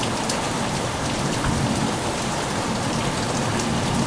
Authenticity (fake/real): fake